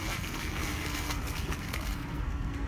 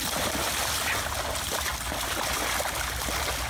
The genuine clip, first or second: second